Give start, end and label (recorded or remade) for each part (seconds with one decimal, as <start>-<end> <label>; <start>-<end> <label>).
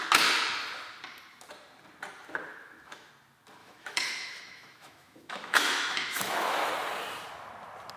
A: 0.0-2.5 recorded; 2.5-3.1 remade; 3.1-3.6 recorded; 3.6-6.7 remade; 6.7-8.0 recorded